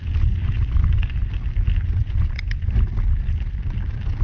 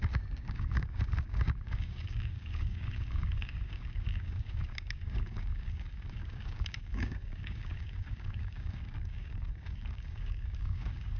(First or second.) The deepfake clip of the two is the second